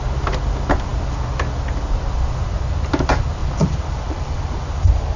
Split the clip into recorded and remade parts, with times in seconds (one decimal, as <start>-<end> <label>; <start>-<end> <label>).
0.0-3.4 recorded; 3.4-5.2 remade